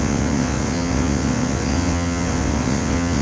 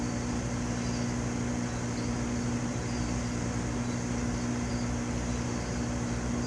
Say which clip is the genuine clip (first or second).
second